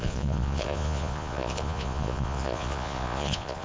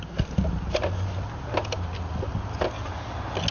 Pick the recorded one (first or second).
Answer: second